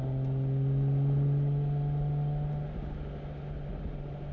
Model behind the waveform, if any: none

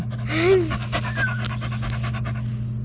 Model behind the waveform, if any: none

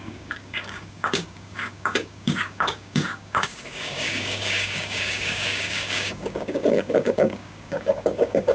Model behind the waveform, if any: codec, DAC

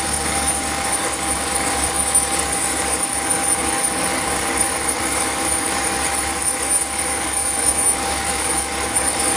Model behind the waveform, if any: codec, DAC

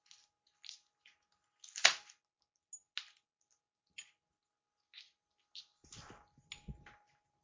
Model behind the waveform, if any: none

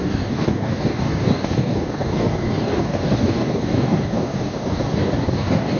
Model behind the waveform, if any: codec, DAC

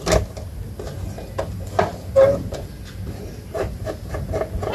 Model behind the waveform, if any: none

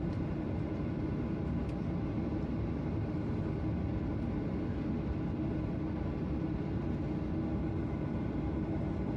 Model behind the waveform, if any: none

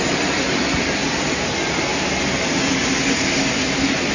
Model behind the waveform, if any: none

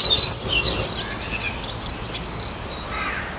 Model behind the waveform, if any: none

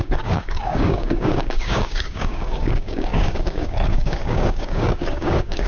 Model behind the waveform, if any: codec, DAC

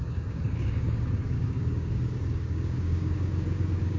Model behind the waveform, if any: codec, DAC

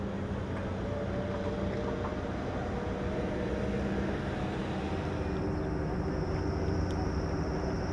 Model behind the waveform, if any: none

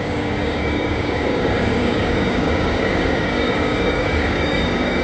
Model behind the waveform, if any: codec, DAC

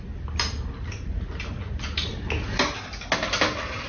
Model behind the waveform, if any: none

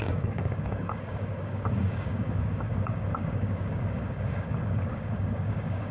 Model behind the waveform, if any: codec, DAC